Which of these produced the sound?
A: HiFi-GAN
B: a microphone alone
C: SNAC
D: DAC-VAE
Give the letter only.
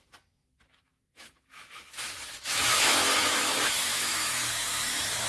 D